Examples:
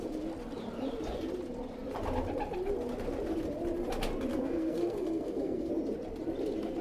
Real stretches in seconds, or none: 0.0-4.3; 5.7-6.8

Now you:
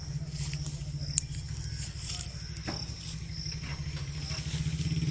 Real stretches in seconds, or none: 0.0-5.1

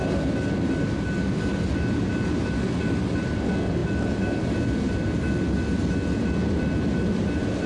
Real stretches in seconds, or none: 0.0-7.7

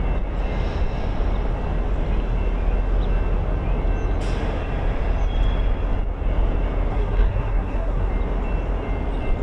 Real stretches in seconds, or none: 0.0-6.9; 8.1-9.4

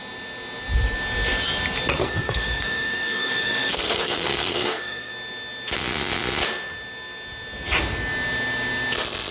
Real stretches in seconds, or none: 0.0-2.0; 5.1-9.3

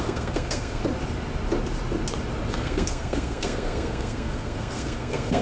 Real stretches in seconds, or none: 0.8-2.5

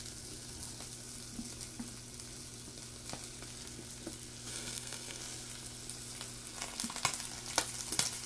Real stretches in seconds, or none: 0.0-4.5; 5.2-8.3